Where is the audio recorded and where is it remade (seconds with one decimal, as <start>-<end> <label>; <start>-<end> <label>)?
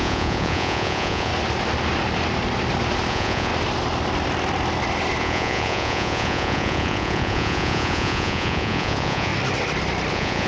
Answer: 0.0-1.3 remade; 1.3-3.1 recorded; 3.1-3.5 remade; 3.5-5.2 recorded; 5.2-9.3 remade; 9.3-10.1 recorded; 10.1-10.5 remade